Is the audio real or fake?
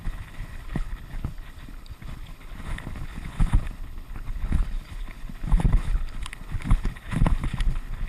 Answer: fake